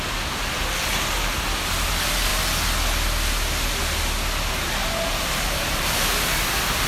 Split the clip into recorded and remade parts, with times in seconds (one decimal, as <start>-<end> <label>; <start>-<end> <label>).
0.0-4.8 recorded; 4.8-6.3 remade; 6.3-6.9 recorded